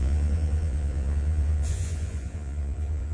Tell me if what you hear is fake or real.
fake